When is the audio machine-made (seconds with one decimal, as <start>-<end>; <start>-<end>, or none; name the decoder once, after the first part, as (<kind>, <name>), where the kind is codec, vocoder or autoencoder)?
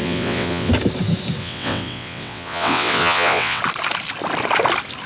0.0-0.7 (vocoder, WaveNeXt); 1.4-3.6